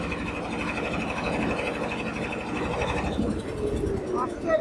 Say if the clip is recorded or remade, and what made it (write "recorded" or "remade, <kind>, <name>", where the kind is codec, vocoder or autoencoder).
recorded